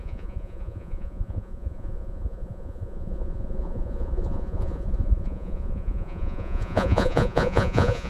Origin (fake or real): fake